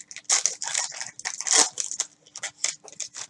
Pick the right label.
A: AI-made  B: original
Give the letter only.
B